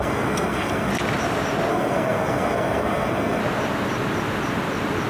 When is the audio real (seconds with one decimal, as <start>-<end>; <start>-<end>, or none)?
0.9-1.7; 3.4-5.1